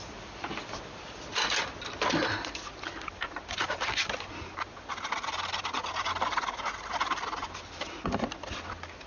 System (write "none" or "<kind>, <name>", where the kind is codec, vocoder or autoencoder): none